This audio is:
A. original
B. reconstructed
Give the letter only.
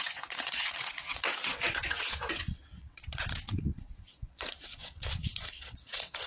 B